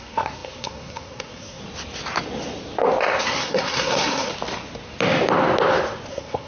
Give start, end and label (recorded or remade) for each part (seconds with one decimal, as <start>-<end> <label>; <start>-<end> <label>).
0.0-1.6 remade; 1.6-3.2 recorded; 3.2-4.3 remade; 4.3-6.1 recorded; 6.1-6.5 remade